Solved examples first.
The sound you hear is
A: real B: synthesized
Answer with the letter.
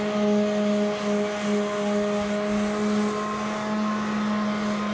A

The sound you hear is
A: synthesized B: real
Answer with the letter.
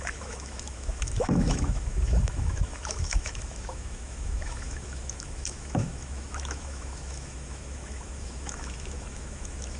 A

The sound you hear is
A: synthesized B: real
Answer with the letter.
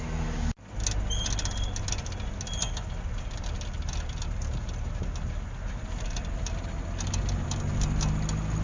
B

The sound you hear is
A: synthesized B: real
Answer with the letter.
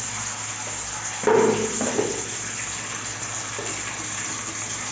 B